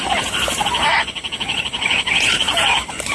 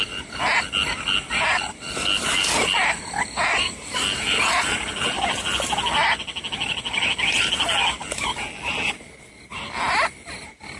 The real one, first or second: second